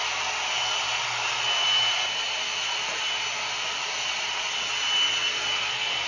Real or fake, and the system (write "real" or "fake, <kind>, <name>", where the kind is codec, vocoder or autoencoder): real